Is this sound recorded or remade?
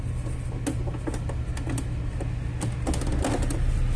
recorded